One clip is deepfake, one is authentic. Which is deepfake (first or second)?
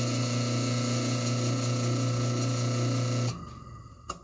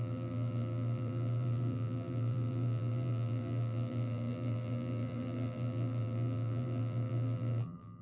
second